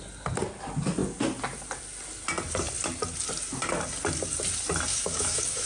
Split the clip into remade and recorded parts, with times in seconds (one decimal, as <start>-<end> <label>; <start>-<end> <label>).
0.0-4.9 recorded; 4.9-5.7 remade